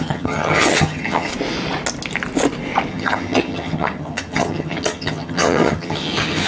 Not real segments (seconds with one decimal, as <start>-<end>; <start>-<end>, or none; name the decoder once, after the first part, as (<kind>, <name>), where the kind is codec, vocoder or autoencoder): 0.0-1.3 (vocoder, HiFi-GAN); 2.9-6.5